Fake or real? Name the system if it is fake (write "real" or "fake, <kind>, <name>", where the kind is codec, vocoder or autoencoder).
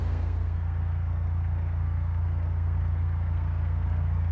fake, codec, SNAC